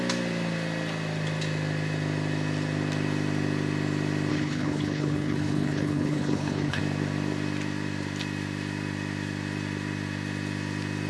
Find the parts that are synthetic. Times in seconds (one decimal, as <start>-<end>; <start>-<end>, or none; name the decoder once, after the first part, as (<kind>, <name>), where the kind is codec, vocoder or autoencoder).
4.3-6.8 (codec, HILCodec)